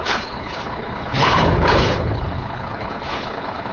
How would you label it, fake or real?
fake